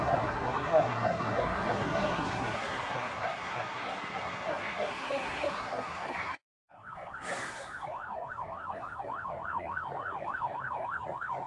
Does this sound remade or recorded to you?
remade